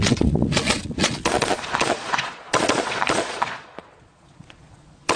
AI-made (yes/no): yes